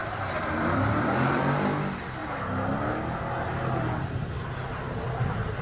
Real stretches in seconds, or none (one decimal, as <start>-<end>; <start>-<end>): 1.4-5.6